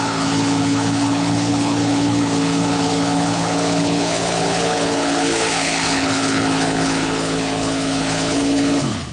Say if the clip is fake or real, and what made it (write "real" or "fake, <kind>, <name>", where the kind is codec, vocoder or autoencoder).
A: fake, codec, HILCodec